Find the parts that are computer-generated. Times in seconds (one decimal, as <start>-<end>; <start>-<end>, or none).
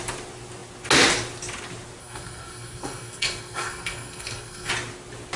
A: 2.0-4.7